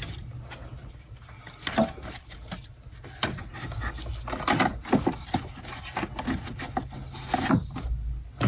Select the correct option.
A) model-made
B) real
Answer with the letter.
B